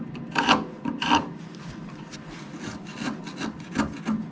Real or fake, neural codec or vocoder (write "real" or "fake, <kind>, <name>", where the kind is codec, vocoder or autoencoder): real